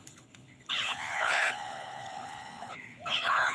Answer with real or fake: fake